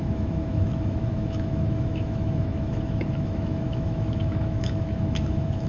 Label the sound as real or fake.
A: fake